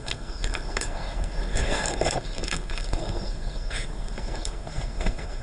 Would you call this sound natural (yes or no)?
no